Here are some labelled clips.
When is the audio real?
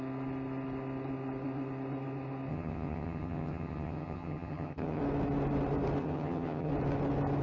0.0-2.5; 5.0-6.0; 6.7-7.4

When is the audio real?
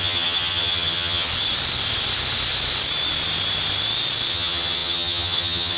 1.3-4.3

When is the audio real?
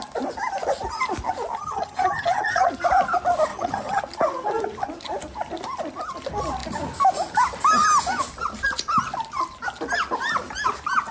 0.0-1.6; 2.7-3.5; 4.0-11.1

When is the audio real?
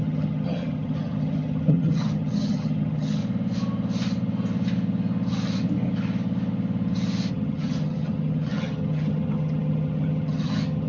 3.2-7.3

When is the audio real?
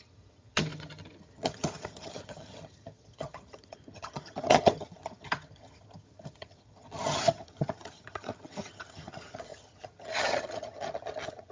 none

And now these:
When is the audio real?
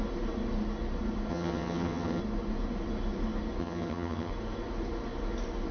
0.0-1.3; 2.2-3.6; 4.3-5.7